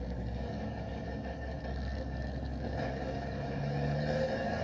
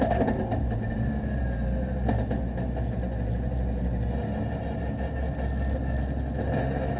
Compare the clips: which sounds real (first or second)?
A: second